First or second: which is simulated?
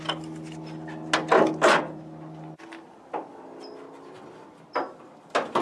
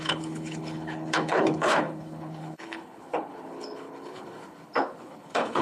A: second